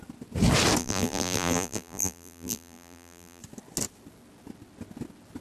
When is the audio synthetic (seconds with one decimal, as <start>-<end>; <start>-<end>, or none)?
0.8-3.4